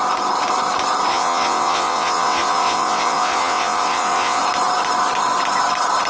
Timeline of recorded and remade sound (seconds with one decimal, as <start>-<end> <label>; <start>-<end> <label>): 0.0-1.1 recorded; 1.1-4.4 remade; 4.4-6.1 recorded